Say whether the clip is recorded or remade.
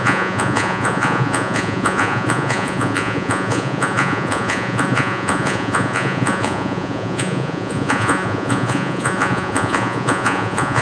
remade